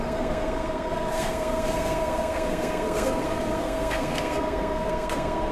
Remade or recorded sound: remade